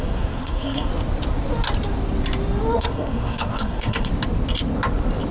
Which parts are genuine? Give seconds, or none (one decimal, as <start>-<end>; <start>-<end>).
0.9-2.8; 4.1-5.3